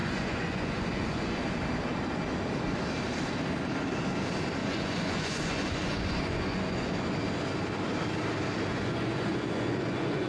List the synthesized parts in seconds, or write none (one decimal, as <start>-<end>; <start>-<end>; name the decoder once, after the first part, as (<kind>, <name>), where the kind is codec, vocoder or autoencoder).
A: 0.0-1.4 (vocoder, Vocos); 4.6-6.9; 8.7-10.3